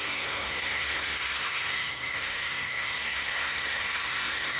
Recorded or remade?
remade